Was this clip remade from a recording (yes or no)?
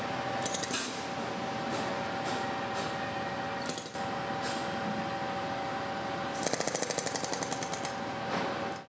no